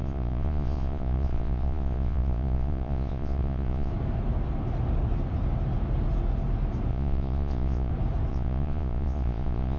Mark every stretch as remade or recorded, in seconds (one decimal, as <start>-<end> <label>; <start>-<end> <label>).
0.0-3.9 remade; 3.9-6.9 recorded; 6.9-7.9 remade; 7.9-8.3 recorded; 8.3-9.8 remade